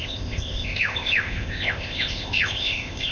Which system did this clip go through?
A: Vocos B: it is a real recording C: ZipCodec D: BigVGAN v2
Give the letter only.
C